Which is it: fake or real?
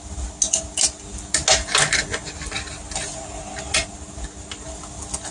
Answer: real